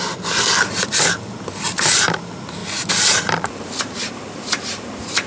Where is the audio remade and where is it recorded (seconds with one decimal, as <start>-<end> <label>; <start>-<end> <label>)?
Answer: 0.0-2.6 recorded; 2.6-5.3 remade

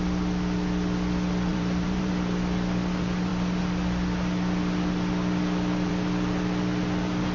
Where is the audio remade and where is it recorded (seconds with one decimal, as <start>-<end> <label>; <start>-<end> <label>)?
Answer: 0.0-1.5 recorded; 1.5-2.1 remade; 2.1-7.3 recorded

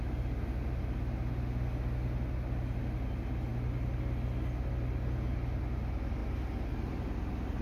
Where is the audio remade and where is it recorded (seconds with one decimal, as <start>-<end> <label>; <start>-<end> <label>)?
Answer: 0.0-7.6 recorded

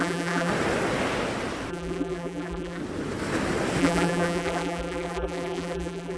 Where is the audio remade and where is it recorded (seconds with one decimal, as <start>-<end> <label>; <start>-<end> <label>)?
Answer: 0.0-0.5 remade; 0.5-1.7 recorded; 1.7-2.8 remade; 2.8-3.8 recorded; 3.8-6.2 remade